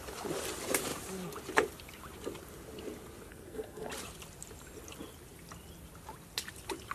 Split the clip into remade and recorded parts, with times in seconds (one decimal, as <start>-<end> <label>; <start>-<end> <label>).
0.0-3.3 recorded; 3.3-3.9 remade; 3.9-6.9 recorded